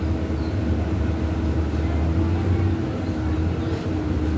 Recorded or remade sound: recorded